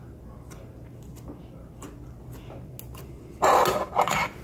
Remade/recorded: recorded